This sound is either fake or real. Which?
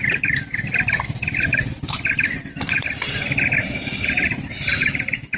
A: fake